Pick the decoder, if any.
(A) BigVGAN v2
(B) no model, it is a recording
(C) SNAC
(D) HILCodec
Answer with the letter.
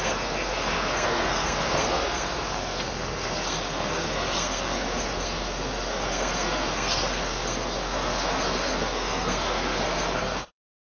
C